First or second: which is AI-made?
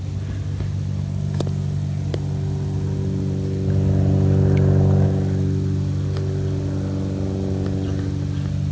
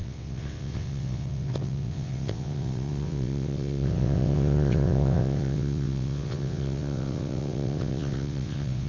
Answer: second